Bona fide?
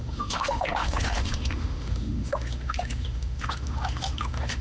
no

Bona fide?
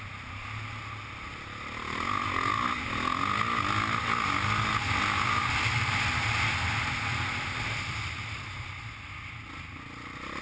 yes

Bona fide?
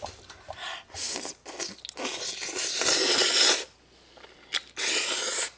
yes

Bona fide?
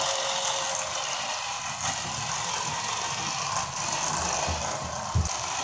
yes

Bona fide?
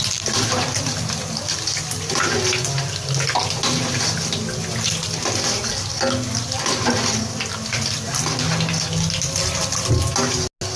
yes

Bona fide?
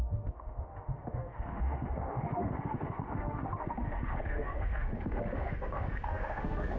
no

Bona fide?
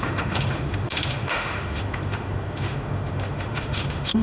no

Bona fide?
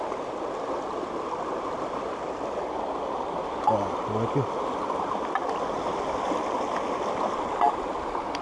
yes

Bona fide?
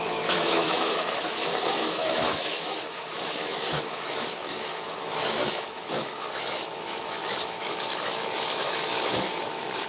no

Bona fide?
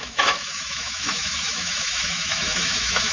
no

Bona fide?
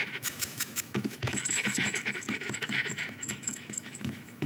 no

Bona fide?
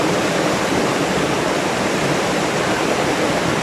yes